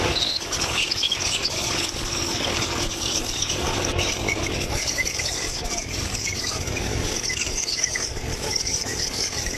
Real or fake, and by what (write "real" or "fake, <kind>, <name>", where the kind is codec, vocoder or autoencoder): fake, codec, DAC